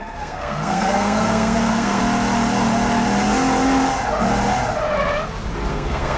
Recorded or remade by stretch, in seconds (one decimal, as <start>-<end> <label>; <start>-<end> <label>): 0.0-2.0 remade; 2.0-5.7 recorded; 5.7-6.2 remade